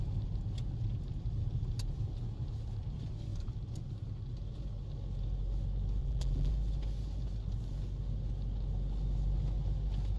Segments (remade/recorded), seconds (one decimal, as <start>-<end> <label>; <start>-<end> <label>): 0.0-6.0 recorded; 6.0-6.5 remade; 6.5-10.2 recorded